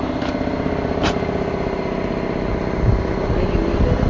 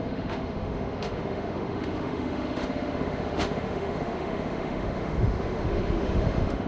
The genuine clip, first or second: first